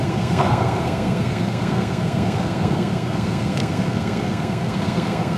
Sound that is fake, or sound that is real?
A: fake